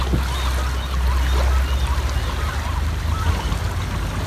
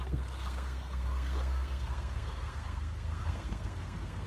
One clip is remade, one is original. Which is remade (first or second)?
second